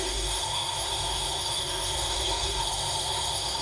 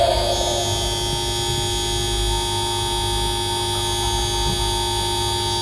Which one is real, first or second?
second